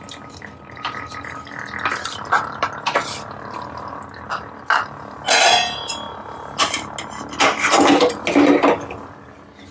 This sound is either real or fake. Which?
real